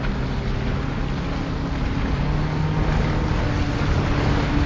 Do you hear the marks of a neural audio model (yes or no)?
no